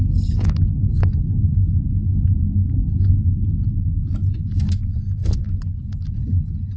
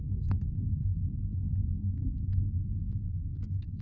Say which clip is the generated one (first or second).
second